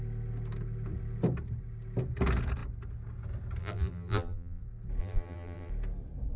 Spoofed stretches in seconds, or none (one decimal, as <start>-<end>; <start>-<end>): 3.6-4.6; 5.0-5.7